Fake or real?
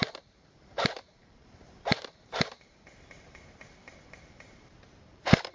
fake